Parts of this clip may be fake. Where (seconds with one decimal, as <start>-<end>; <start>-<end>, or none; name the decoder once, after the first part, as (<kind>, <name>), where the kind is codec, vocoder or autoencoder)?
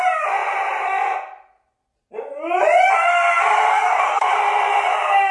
3.7-4.3 (codec, DAC)